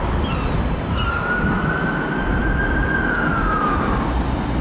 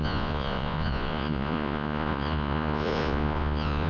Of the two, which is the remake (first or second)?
second